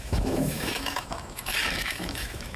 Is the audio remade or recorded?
remade